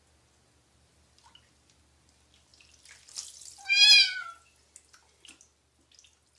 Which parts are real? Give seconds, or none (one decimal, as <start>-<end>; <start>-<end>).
0.0-6.4